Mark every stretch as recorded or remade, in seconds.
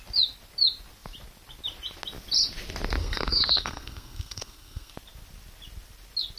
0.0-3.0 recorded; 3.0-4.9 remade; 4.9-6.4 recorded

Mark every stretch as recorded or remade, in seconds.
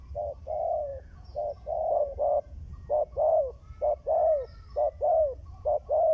0.0-0.9 recorded; 0.9-3.4 remade; 3.4-6.1 recorded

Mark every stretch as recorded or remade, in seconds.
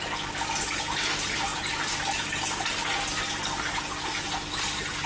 0.0-5.1 recorded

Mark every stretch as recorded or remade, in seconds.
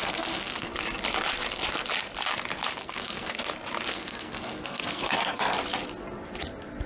0.0-0.7 remade; 0.7-2.8 recorded; 2.8-3.4 remade; 3.4-3.9 recorded; 3.9-5.5 remade; 5.5-6.9 recorded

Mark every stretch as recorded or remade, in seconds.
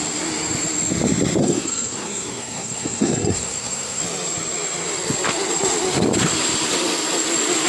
0.0-1.4 recorded; 1.4-4.0 remade; 4.0-7.7 recorded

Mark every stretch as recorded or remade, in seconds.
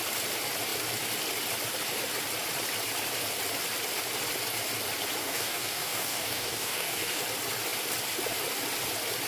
0.0-5.2 recorded; 5.2-7.2 remade; 7.2-9.3 recorded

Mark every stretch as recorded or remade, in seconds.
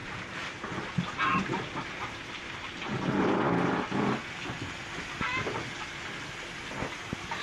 0.0-0.6 remade; 0.6-7.4 recorded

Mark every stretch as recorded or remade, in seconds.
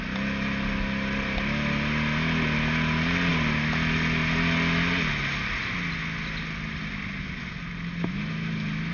0.0-8.9 recorded